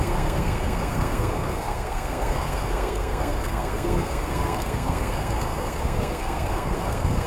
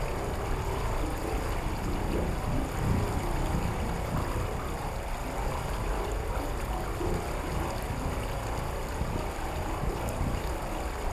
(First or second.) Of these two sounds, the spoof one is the first